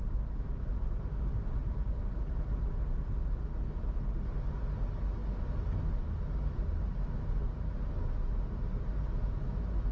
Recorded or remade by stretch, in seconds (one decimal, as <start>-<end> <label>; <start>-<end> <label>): 0.0-9.9 recorded